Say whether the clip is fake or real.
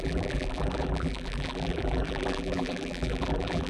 fake